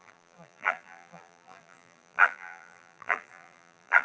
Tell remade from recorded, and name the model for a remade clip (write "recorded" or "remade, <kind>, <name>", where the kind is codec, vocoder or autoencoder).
remade, vocoder, BigVGAN v2